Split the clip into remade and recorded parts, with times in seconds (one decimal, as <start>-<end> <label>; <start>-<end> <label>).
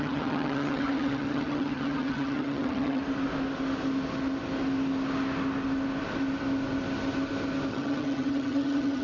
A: 0.0-3.0 remade; 3.0-7.7 recorded; 7.7-9.0 remade